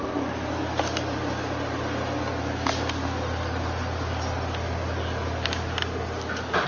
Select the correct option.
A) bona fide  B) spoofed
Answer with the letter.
A